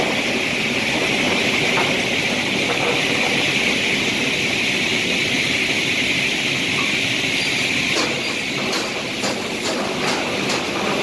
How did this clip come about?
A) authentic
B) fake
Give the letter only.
A